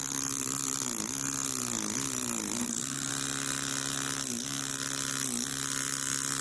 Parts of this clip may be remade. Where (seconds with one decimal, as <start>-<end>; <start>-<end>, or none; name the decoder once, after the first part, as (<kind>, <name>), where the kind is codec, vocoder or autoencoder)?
2.6-3.1 (codec, SNAC)